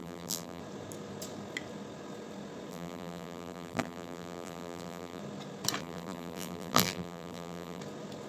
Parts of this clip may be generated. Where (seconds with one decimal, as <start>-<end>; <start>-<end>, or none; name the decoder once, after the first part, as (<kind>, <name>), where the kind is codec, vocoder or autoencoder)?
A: 0.0-0.6 (vocoder, BigVGAN v2); 2.7-5.2; 5.8-7.8